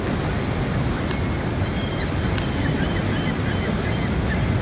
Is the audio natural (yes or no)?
yes